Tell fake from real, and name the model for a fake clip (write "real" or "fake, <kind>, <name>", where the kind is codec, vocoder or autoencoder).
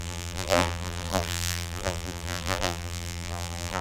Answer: fake, vocoder, BigVGAN v2